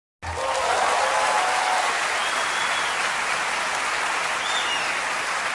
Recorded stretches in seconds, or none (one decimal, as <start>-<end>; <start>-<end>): 0.0-5.5